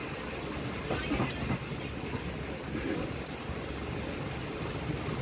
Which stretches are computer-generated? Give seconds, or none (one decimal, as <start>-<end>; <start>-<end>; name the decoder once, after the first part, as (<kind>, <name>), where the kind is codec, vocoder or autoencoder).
none